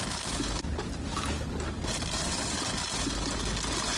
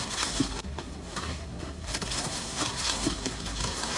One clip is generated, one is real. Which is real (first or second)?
first